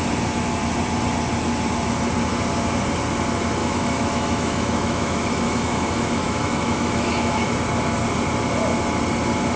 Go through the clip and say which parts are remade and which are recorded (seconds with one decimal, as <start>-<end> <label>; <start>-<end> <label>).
0.0-3.6 recorded; 3.6-7.5 remade; 7.5-9.6 recorded